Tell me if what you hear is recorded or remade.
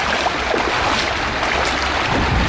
recorded